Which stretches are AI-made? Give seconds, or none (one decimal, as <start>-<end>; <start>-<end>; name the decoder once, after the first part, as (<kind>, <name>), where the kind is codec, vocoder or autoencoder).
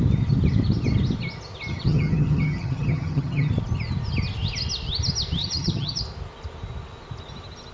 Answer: 1.7-3.5 (vocoder, HiFi-GAN); 5.4-6.0